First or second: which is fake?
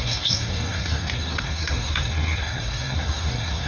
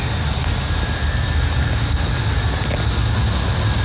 first